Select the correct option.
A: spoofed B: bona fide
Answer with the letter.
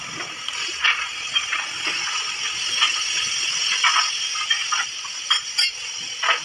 B